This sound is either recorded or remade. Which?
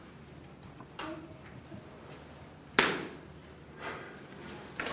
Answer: recorded